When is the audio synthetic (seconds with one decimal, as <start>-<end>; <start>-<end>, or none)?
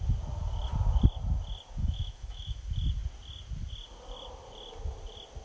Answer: 1.8-2.6